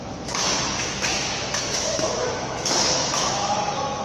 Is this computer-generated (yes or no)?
yes